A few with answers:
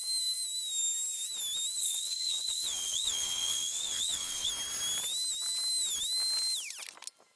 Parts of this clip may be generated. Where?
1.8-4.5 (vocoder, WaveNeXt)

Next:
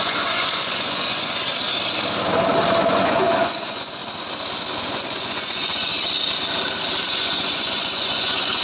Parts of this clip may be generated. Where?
0.0-1.5 (vocoder, Vocos); 2.9-4.0; 4.8-5.9; 7.1-8.6